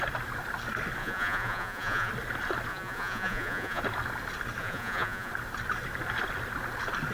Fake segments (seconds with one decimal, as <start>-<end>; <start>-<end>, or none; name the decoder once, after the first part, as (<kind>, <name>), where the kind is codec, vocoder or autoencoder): 1.0-2.1 (vocoder, Vocos); 2.7-3.8; 4.6-5.3